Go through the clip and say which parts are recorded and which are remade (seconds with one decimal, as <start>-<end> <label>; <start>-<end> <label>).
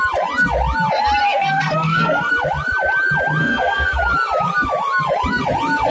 0.0-1.2 recorded; 1.2-2.3 remade; 2.3-3.4 recorded; 3.4-4.0 remade; 4.0-5.9 recorded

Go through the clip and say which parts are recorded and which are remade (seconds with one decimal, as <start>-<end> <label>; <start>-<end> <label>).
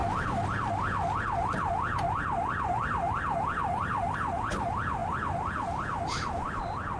0.0-2.5 recorded; 2.5-5.0 remade; 5.0-6.5 recorded; 6.5-7.0 remade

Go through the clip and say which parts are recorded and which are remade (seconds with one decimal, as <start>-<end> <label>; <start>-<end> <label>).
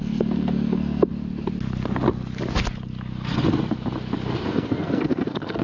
0.0-1.1 remade; 1.1-4.5 recorded; 4.5-5.6 remade